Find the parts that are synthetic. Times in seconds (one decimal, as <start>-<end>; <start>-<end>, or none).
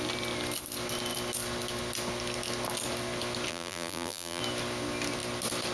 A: 3.5-4.4